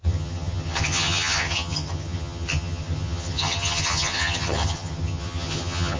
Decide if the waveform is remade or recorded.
remade